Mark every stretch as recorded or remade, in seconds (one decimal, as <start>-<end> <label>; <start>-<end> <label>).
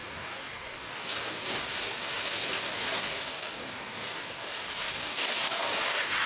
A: 0.0-6.3 remade